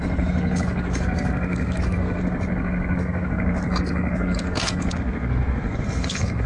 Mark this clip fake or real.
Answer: fake